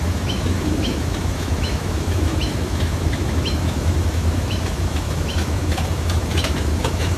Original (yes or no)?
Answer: no